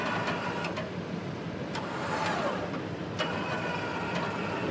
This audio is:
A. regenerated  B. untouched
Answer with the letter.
B